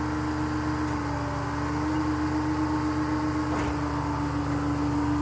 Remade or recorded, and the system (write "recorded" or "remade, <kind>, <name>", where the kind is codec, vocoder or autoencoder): recorded